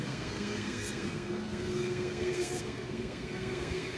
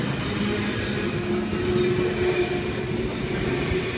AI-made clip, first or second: first